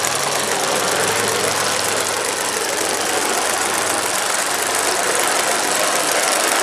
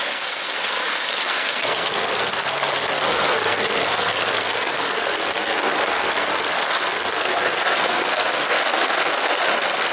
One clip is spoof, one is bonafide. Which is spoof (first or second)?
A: second